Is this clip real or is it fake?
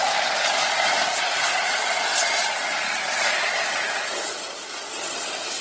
real